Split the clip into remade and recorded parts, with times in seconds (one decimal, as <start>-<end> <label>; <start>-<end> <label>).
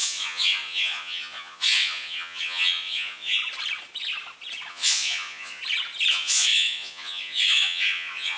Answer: 0.0-3.4 remade; 3.4-4.7 recorded; 4.7-5.6 remade; 5.6-6.1 recorded; 6.1-8.4 remade